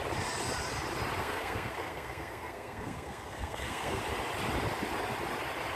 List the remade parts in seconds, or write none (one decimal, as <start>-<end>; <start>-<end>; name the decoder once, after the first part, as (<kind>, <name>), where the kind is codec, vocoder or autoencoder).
1.2-4.0 (codec, SNAC)